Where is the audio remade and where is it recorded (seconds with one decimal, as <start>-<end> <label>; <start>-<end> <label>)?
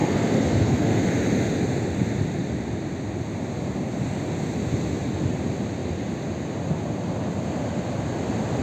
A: 0.0-1.1 remade; 1.1-8.6 recorded